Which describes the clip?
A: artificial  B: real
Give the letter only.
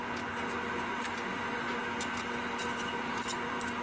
B